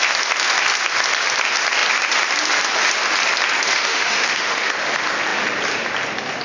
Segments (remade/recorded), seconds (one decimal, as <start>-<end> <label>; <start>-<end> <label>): 0.0-3.7 recorded; 3.7-4.7 remade; 4.7-6.4 recorded